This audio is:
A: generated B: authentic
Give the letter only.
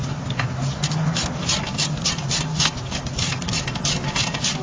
B